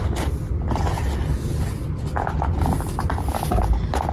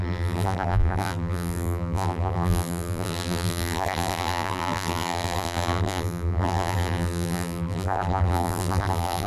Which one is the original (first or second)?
first